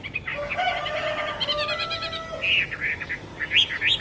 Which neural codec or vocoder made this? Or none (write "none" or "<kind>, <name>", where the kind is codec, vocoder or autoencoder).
none